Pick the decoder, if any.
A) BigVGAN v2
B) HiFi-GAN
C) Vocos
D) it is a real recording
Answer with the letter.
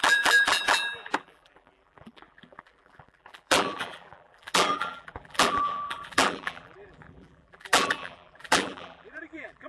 A